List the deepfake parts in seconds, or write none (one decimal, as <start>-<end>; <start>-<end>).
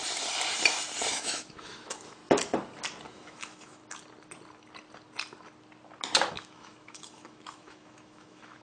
1.1-2.2; 3.1-3.8; 6.3-8.6